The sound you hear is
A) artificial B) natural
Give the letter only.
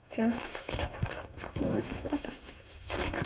A